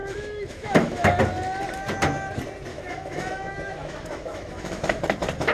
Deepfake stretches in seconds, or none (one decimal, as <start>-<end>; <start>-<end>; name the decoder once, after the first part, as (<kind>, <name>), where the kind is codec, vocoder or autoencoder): 0.0-1.2 (autoencoder, DAC-VAE); 2.7-5.0